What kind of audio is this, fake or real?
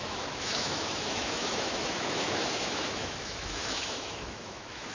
fake